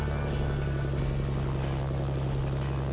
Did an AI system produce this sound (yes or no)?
no